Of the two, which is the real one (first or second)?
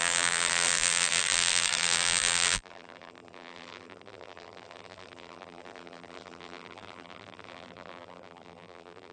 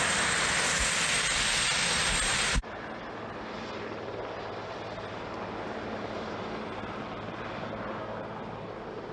second